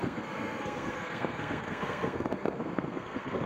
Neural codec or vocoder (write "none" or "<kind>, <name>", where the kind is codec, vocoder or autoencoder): codec, SNAC